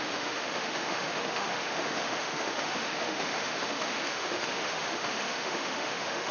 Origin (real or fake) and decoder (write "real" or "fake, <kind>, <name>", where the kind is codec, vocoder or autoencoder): fake, autoencoder, DAC-VAE